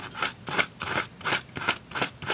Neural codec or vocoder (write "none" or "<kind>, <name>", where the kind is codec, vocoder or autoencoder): none